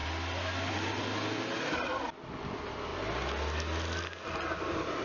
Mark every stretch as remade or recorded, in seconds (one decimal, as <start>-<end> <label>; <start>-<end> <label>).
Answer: 0.0-5.0 recorded